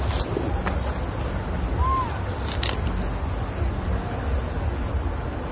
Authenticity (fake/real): real